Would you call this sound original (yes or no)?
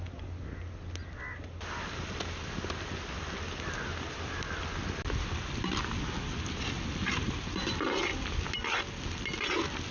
yes